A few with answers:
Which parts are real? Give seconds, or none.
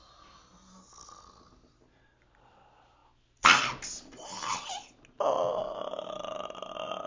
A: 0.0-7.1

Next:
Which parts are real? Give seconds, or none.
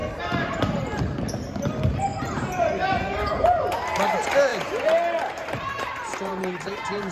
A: 1.0-2.1; 3.3-4.5